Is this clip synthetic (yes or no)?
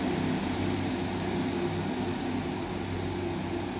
no